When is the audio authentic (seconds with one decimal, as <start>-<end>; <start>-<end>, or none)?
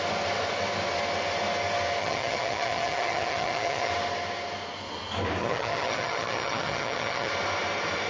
0.0-2.0; 3.9-5.4; 7.3-8.1